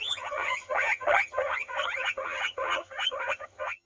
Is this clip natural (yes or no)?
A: no